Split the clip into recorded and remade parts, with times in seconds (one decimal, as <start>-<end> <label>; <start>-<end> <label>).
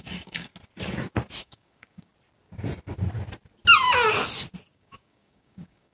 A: 0.0-0.5 remade; 0.5-1.4 recorded; 1.4-2.1 remade; 2.1-4.7 recorded; 4.7-5.9 remade